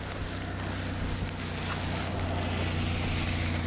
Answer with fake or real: real